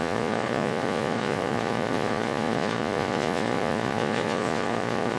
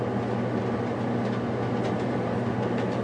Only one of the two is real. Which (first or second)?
second